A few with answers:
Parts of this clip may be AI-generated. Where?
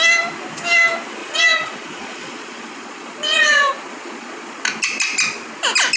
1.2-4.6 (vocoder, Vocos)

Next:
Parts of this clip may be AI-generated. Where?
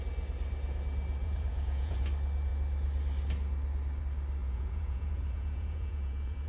1.2-2.0 (vocoder, Vocos); 4.4-6.5